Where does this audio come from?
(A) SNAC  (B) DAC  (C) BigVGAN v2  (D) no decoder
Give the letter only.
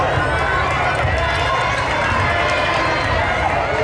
D